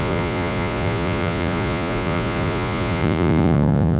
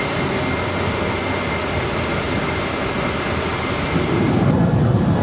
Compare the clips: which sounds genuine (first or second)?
second